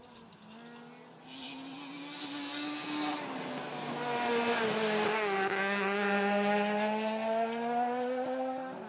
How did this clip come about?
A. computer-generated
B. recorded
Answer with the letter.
B